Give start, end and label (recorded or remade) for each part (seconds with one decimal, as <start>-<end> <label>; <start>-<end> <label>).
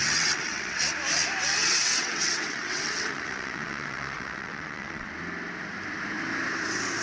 0.0-0.8 remade; 0.8-1.6 recorded; 1.6-5.1 remade; 5.1-7.0 recorded